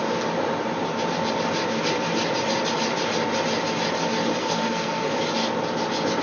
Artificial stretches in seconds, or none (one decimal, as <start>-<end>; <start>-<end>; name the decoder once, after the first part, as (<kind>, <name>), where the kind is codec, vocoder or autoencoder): 4.4-5.1 (codec, SNAC)